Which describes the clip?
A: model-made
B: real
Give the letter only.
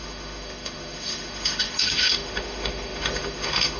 A